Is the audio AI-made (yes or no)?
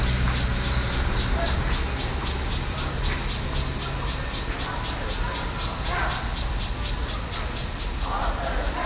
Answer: no